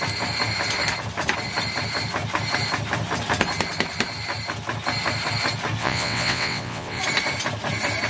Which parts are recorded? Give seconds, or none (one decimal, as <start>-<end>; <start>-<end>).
0.0-5.8; 7.0-8.1